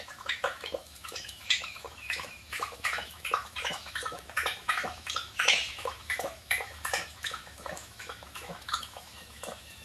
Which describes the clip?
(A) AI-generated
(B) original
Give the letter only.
A